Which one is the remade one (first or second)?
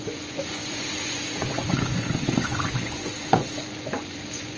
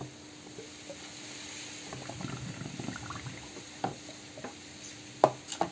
first